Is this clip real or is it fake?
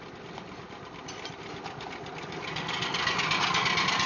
real